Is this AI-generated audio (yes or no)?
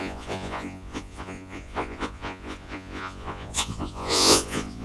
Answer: yes